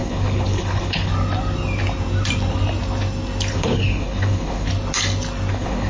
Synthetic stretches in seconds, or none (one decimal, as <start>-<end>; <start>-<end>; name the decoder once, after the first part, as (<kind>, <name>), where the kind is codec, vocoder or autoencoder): 0.0-1.1 (codec, HILCodec); 3.5-4.7; 5.5-5.9